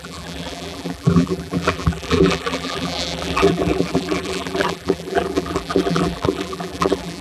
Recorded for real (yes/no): no